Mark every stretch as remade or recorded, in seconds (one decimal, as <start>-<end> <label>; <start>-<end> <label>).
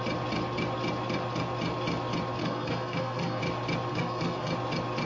0.0-2.4 recorded; 2.4-3.4 remade; 3.4-3.9 recorded; 3.9-4.5 remade; 4.5-5.1 recorded